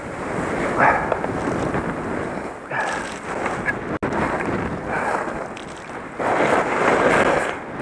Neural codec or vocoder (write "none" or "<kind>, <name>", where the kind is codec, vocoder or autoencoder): none